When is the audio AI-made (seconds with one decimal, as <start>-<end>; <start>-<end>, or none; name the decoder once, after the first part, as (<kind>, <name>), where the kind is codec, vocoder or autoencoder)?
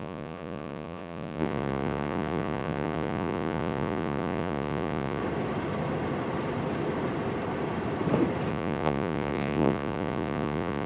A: 0.0-5.2 (vocoder, Vocos); 8.5-10.9